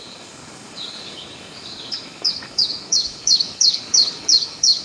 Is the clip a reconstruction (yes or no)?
yes